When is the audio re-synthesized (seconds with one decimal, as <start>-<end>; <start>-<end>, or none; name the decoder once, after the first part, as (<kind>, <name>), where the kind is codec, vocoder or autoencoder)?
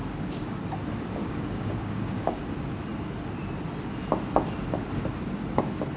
1.2-2.4 (codec, DAC)